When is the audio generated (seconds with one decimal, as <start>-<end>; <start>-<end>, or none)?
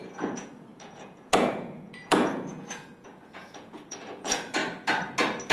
0.0-4.6